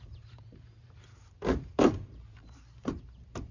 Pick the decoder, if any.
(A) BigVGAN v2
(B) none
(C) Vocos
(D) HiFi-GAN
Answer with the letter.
A